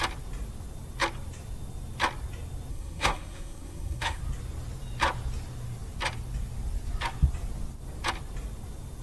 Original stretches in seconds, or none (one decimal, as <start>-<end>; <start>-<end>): 0.0-2.7; 4.2-9.0